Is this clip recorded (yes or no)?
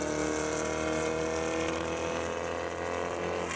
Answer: yes